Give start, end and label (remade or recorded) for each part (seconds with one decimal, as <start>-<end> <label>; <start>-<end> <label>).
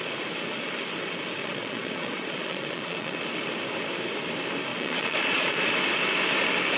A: 0.0-1.4 recorded; 1.4-3.2 remade; 3.2-4.7 recorded; 4.7-5.7 remade; 5.7-6.8 recorded